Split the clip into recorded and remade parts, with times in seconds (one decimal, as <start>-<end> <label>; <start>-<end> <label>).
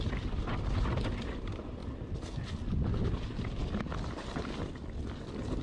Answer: 0.0-1.8 remade; 1.8-3.0 recorded; 3.0-3.6 remade; 3.6-5.6 recorded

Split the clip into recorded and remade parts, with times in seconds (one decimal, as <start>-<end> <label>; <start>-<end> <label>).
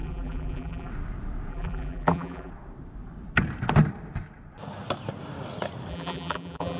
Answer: 0.0-0.9 remade; 0.9-1.5 recorded; 1.5-2.5 remade; 2.5-5.9 recorded; 5.9-6.8 remade